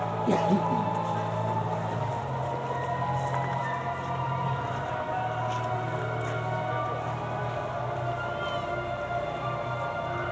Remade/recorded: recorded